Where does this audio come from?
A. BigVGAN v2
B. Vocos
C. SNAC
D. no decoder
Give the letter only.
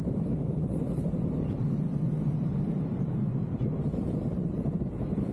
D